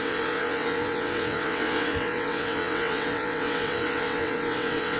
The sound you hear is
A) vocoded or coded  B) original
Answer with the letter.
A